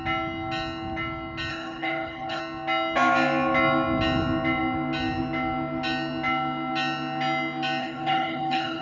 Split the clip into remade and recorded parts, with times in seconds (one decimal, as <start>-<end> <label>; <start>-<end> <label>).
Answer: 0.0-1.5 recorded; 1.5-2.4 remade; 2.4-7.8 recorded; 7.8-8.8 remade